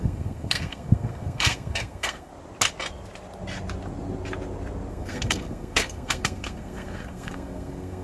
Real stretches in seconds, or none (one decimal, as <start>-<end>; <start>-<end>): 2.3-4.9